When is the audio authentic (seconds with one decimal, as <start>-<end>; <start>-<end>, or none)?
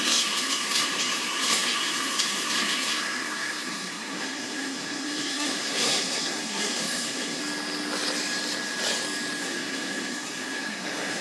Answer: 7.4-9.4